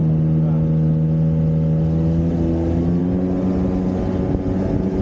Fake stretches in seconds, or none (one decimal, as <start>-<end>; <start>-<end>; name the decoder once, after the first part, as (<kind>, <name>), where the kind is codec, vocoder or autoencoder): none